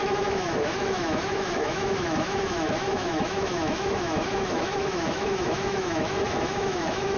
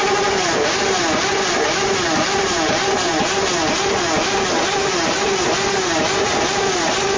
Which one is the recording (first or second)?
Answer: second